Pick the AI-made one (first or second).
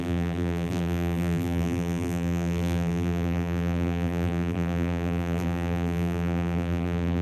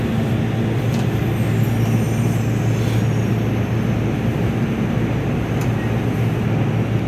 first